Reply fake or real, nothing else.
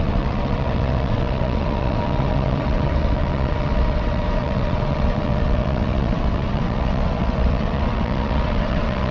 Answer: fake